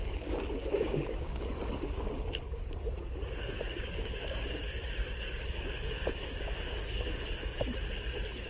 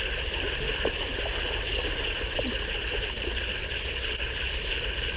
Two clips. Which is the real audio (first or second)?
second